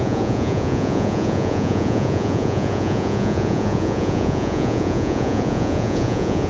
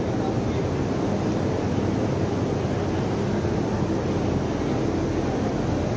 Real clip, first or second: second